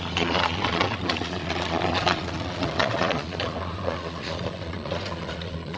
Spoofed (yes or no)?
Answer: yes